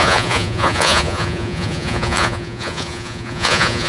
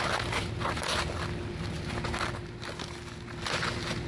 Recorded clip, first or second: second